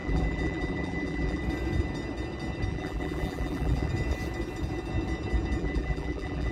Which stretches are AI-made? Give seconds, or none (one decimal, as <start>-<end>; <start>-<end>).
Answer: 0.0-1.4; 2.7-3.9; 5.6-6.5